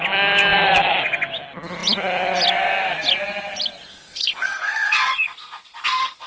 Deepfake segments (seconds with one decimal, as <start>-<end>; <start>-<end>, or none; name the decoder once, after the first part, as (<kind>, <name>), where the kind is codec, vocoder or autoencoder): 3.9-6.3 (codec, SNAC)

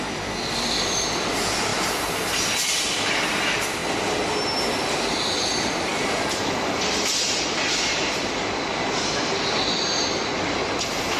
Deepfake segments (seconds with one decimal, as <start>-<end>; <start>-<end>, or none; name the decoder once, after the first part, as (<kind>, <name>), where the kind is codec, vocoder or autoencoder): 0.0-3.8 (vocoder, BigVGAN v2); 5.0-11.2

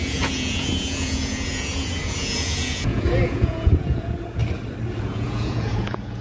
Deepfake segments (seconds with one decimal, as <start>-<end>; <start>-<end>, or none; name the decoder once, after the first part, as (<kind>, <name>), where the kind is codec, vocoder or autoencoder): 0.0-4.4 (vocoder, Vocos); 5.0-6.2